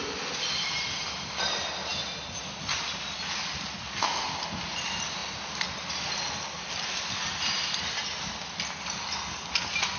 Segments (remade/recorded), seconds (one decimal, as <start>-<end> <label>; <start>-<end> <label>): 0.0-10.0 recorded